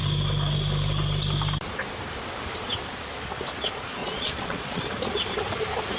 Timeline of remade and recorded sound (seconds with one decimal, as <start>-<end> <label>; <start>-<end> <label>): 0.0-4.0 recorded; 4.0-4.8 remade; 4.8-6.0 recorded